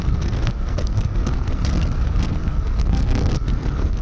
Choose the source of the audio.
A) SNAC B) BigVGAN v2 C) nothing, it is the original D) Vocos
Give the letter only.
A